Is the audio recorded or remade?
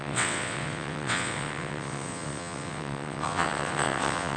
remade